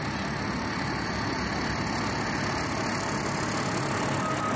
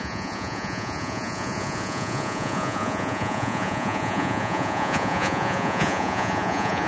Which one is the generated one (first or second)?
second